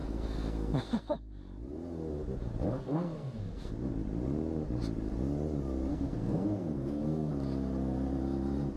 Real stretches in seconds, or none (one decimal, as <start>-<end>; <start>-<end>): 1.4-2.7; 3.7-5.9; 7.3-8.8